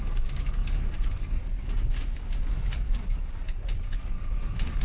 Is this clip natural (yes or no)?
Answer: no